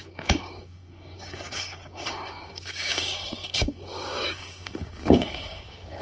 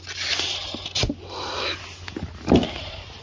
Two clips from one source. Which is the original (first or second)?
second